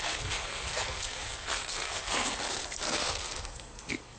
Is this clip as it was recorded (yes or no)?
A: no